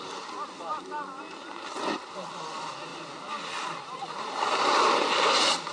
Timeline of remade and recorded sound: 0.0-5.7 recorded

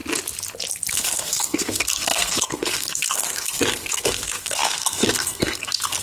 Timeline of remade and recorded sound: 0.0-0.9 recorded; 0.9-6.0 remade

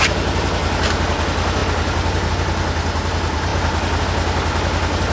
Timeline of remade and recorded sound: 0.0-5.1 recorded

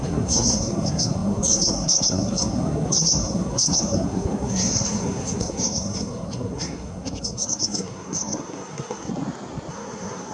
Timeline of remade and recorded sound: 0.0-9.1 remade; 9.1-9.7 recorded; 9.7-10.3 remade

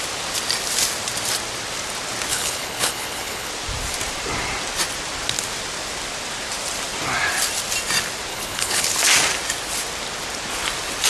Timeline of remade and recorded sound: 0.0-2.3 recorded; 2.3-3.5 remade; 3.5-8.3 recorded; 8.3-8.9 remade; 8.9-11.1 recorded

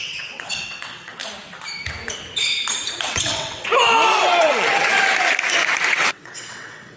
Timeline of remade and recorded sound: 0.0-1.2 remade; 1.2-3.0 recorded; 3.0-3.7 remade; 3.7-4.4 recorded; 4.4-4.9 remade; 4.9-5.9 recorded; 5.9-7.0 remade

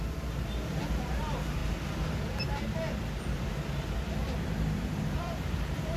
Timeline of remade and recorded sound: 0.0-1.6 remade; 1.6-5.2 recorded; 5.2-6.0 remade